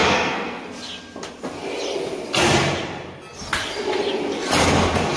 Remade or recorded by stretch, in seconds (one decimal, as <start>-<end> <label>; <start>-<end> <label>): 0.0-0.6 remade; 0.6-5.2 recorded